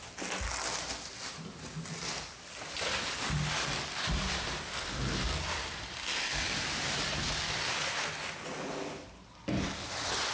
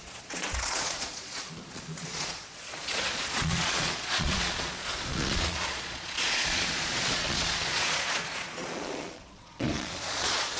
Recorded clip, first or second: first